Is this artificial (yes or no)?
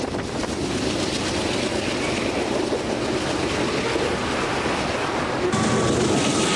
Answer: no